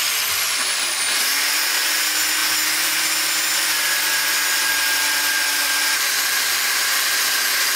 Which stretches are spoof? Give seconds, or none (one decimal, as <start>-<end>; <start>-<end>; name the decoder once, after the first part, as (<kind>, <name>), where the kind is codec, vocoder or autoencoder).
none